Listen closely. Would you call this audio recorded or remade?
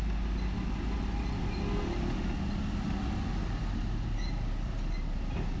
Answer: recorded